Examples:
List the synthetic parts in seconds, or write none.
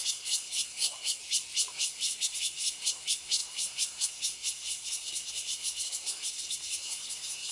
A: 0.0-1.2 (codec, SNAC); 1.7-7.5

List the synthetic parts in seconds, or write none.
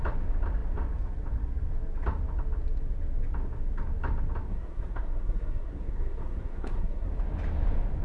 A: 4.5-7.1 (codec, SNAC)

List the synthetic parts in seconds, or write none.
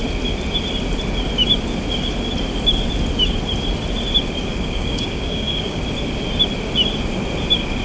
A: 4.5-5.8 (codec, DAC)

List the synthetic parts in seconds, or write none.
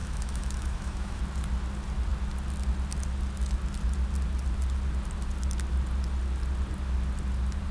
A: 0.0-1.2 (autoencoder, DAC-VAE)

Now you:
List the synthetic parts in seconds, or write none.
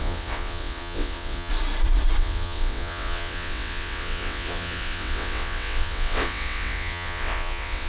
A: 0.0-1.5 (vocoder, WaveNeXt); 2.2-7.9